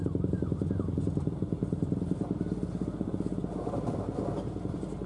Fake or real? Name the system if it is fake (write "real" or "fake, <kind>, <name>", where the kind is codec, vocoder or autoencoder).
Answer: real